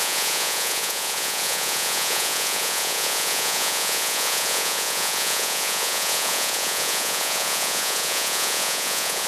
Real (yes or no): no